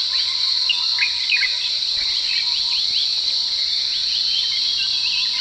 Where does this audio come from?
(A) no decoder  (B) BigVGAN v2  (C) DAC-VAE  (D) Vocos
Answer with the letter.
A